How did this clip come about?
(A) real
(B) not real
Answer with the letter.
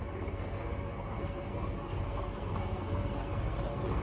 B